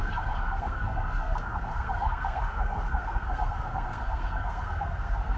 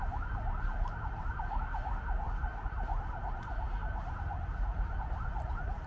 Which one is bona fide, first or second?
second